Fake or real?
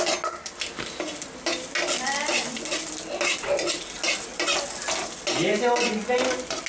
real